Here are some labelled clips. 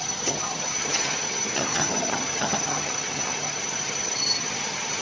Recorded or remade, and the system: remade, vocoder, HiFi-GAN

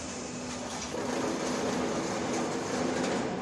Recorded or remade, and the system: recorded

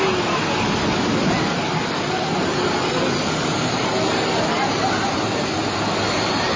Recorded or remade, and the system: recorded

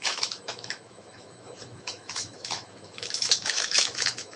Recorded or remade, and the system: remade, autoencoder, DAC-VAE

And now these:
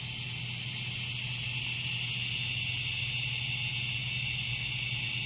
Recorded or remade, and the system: recorded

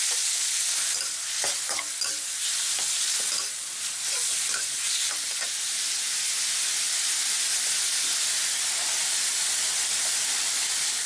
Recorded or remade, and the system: recorded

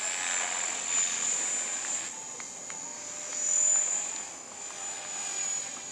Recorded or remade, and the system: recorded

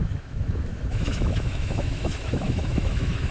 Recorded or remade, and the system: remade, autoencoder, DAC-VAE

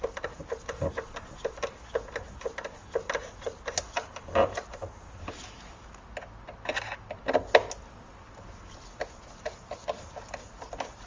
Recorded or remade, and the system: recorded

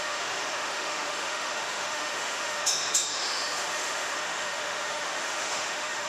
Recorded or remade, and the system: remade, autoencoder, DAC-VAE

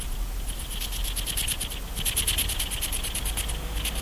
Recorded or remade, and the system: recorded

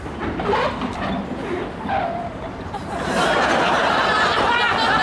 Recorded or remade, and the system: recorded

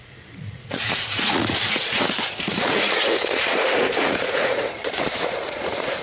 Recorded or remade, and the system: remade, vocoder, Vocos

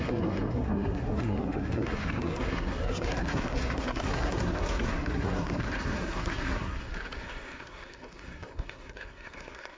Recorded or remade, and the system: remade, codec, SNAC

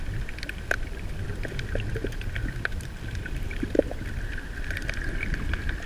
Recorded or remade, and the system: recorded